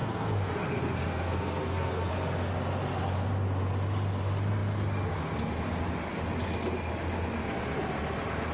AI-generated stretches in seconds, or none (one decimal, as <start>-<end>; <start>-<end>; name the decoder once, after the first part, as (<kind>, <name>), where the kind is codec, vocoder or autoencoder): 0.0-2.1 (codec, SNAC)